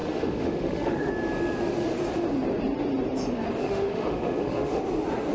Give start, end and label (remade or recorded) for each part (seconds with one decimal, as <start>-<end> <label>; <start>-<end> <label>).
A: 0.0-1.1 remade; 1.1-3.6 recorded; 3.6-4.8 remade; 4.8-5.3 recorded